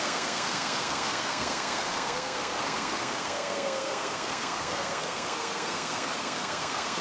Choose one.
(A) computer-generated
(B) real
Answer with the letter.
A